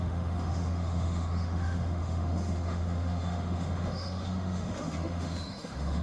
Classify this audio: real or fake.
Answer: fake